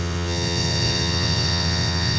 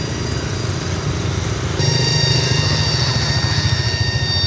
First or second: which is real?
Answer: second